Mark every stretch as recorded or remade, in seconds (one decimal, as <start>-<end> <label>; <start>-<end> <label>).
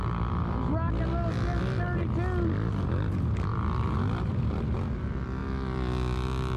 0.0-3.5 recorded; 3.5-4.6 remade; 4.6-6.6 recorded